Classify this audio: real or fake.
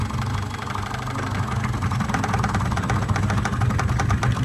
real